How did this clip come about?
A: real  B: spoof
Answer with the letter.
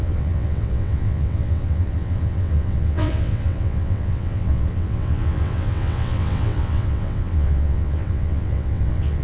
B